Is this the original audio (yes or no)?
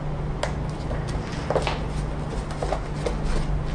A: yes